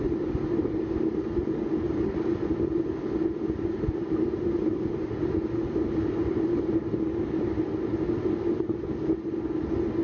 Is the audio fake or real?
real